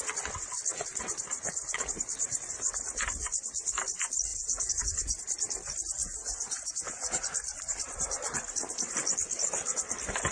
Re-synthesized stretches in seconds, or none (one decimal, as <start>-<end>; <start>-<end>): 4.3-5.2; 6.0-7.2